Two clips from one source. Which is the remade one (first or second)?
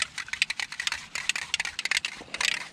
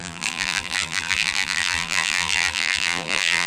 second